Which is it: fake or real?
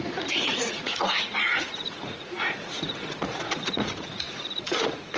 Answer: fake